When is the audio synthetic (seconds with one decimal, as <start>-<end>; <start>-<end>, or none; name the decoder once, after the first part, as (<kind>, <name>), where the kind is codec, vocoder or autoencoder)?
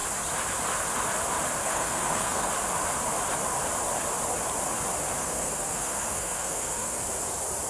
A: 1.6-2.5 (codec, SNAC); 5.2-7.0